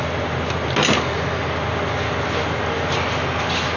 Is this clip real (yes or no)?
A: yes